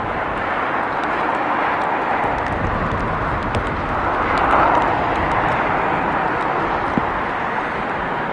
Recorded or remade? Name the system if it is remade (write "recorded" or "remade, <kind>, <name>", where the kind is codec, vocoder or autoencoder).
recorded